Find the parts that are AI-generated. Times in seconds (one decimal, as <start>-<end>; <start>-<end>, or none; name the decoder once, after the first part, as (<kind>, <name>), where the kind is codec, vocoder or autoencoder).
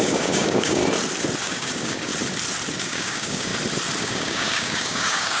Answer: 0.0-0.8 (codec, DAC); 1.4-2.1; 2.8-3.5; 4.0-5.4